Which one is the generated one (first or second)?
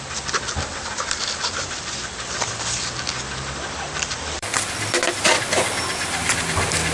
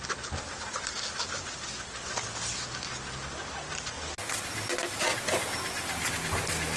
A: first